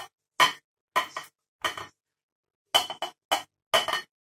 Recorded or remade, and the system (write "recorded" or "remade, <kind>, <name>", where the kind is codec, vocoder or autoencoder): recorded